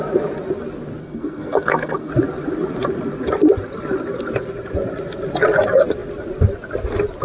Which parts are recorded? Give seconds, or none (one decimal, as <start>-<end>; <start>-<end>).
0.0-1.0; 2.1-7.2